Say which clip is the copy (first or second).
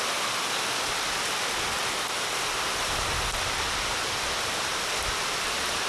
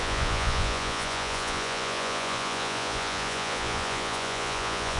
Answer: second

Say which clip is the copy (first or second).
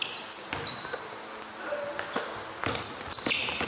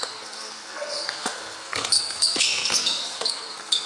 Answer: second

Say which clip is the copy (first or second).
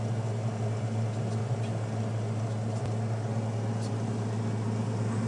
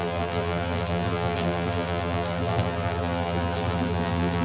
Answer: second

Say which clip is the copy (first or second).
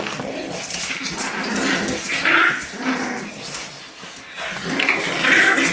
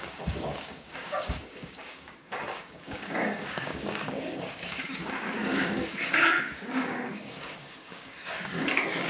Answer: second